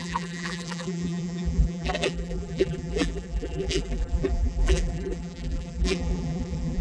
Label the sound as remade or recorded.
remade